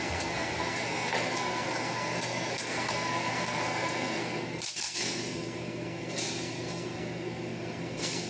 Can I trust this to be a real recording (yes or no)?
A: no